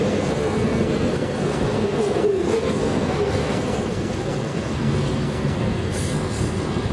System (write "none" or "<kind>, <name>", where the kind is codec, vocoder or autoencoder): codec, SNAC